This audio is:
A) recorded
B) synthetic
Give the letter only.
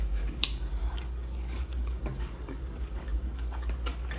B